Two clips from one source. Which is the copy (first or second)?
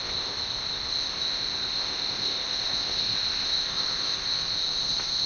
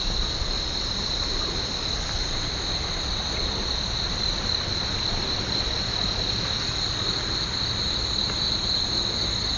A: first